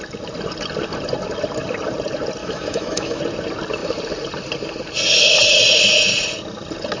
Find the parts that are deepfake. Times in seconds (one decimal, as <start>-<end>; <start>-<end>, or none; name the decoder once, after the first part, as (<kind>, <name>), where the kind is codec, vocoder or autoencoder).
2.4-3.2 (autoencoder, DAC-VAE)